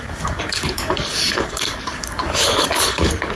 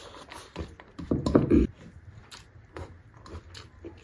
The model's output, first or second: first